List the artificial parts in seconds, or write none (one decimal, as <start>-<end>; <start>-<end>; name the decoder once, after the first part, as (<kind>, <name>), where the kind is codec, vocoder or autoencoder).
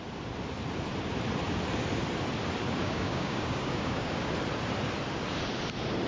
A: 2.6-4.3 (codec, DAC)